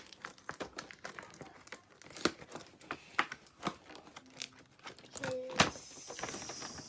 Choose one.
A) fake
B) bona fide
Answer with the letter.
B